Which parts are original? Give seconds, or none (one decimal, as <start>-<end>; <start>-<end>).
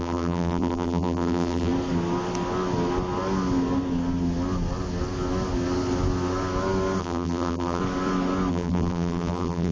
1.7-7.0; 7.8-8.5